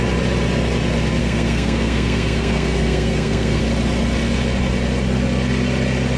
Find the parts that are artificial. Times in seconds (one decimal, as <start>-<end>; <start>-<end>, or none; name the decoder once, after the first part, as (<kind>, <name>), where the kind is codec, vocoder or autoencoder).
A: 1.2-3.6 (codec, SNAC)